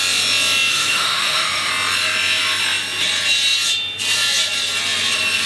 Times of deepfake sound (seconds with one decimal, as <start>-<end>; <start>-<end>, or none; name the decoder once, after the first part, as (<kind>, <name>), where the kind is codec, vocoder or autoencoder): 0.7-1.7 (autoencoder, DAC-VAE)